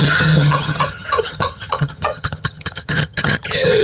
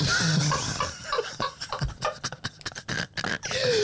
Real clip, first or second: second